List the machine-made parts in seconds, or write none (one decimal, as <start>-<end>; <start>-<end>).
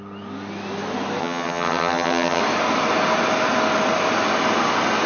1.2-2.4